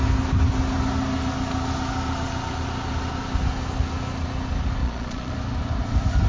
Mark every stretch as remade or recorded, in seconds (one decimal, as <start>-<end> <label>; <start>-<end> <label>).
0.0-4.8 recorded; 4.8-5.3 remade; 5.3-6.3 recorded